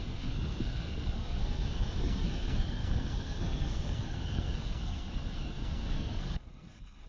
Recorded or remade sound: remade